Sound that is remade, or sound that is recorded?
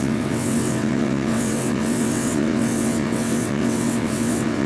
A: remade